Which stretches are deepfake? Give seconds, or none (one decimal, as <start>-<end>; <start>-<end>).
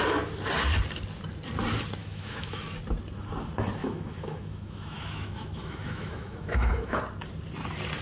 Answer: 2.0-2.6; 3.8-7.0